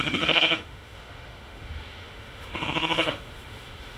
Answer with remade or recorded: remade